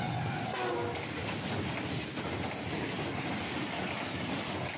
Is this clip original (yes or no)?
yes